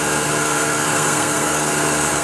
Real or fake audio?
fake